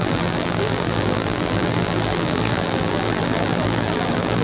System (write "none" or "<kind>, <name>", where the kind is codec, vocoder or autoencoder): vocoder, BigVGAN v2